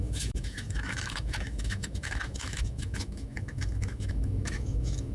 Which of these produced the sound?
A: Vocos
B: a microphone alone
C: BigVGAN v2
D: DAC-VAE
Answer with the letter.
D